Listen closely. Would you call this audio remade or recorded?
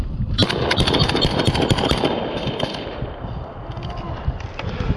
recorded